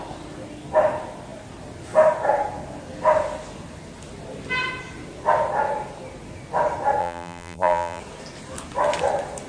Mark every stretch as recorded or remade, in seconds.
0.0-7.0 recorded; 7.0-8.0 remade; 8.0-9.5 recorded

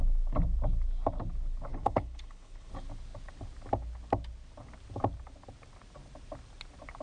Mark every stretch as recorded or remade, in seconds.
0.0-1.7 recorded; 1.7-2.7 remade; 2.7-7.0 recorded

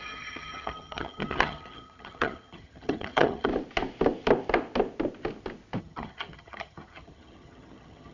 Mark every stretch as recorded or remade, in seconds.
0.0-3.5 remade; 3.5-5.8 recorded; 5.8-8.1 remade

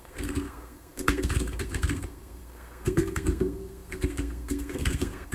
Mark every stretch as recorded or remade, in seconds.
0.0-5.3 remade

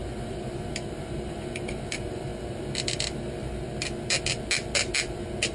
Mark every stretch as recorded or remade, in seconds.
0.0-1.0 recorded; 1.0-2.3 remade; 2.3-5.5 recorded

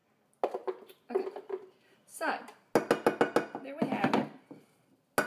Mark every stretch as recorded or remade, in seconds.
0.0-5.3 recorded

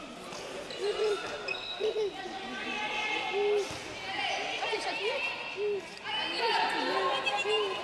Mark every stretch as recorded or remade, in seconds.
0.0-7.8 recorded

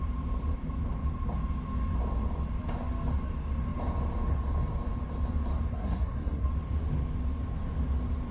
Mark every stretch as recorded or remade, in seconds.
0.0-5.7 recorded; 5.7-6.5 remade; 6.5-8.3 recorded